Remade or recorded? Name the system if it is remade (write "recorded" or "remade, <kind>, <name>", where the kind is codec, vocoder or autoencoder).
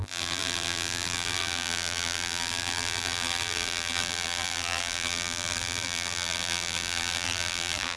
remade, vocoder, BigVGAN v2